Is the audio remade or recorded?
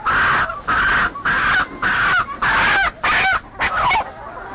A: recorded